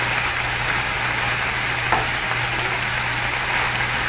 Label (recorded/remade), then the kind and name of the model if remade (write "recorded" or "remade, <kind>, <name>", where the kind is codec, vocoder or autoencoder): recorded